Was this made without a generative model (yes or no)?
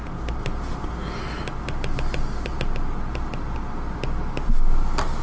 yes